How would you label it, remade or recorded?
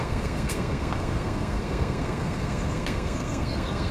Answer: remade